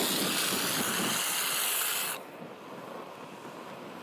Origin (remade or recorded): recorded